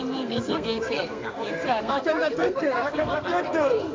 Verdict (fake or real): fake